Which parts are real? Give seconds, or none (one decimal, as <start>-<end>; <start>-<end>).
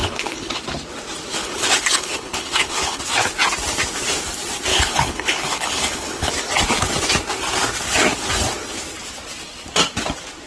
0.6-1.4; 3.0-4.7; 6.3-10.5